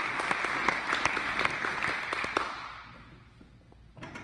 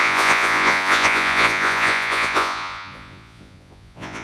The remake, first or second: second